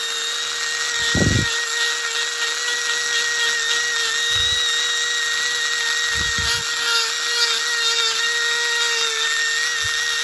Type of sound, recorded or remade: recorded